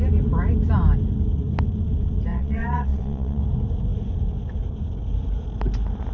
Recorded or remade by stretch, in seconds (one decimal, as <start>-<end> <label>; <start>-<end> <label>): 0.0-2.3 recorded; 2.3-3.4 remade; 3.4-6.1 recorded